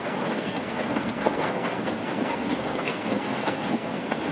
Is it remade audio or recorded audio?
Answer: remade